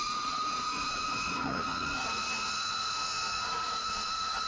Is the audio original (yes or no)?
no